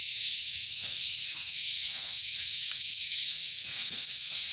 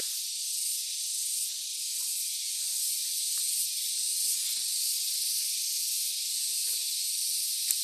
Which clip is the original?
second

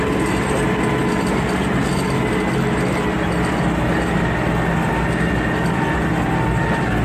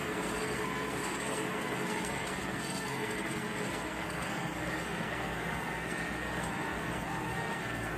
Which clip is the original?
first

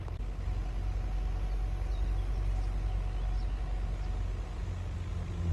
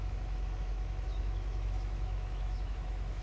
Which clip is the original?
first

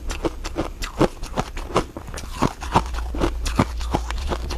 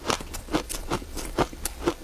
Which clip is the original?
first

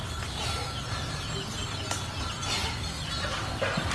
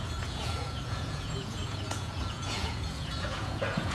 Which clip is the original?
first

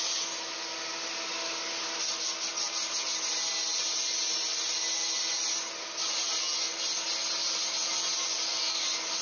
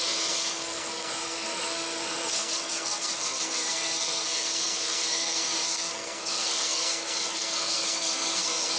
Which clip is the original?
first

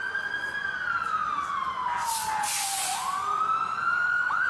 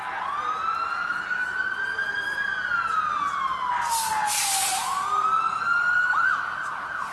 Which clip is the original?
second